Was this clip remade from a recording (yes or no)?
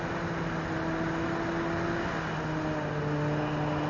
no